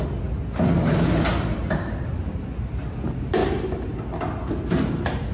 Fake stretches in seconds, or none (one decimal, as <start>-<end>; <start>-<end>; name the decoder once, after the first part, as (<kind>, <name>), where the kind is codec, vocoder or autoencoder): 1.6-2.2 (vocoder, BigVGAN v2)